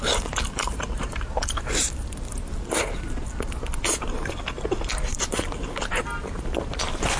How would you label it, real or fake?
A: real